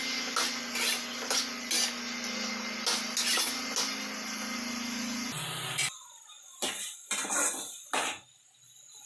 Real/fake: real